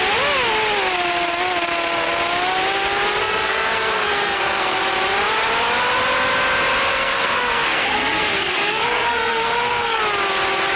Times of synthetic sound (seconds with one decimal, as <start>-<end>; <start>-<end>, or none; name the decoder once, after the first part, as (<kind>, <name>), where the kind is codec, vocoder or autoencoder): 3.2-4.8 (codec, SNAC); 6.9-10.0